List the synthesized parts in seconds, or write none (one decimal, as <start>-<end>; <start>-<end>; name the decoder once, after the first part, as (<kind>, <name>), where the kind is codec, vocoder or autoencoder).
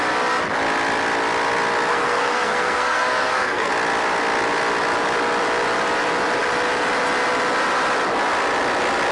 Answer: 1.9-3.7 (codec, SNAC)